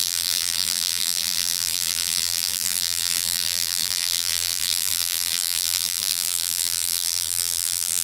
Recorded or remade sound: remade